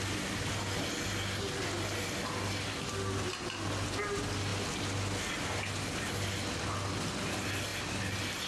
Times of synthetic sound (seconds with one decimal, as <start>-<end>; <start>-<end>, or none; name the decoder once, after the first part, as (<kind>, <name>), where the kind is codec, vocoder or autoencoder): none